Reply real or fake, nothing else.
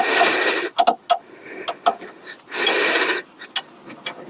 real